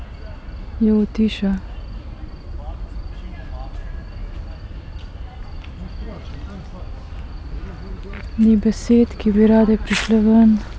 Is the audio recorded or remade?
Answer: recorded